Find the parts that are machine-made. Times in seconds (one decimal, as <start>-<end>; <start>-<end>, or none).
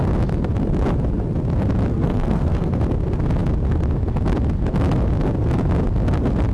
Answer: 1.9-2.7